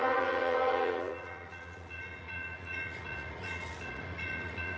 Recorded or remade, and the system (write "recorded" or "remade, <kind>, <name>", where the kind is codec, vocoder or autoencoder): remade, vocoder, Vocos